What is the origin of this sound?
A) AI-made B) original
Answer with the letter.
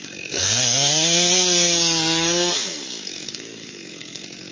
A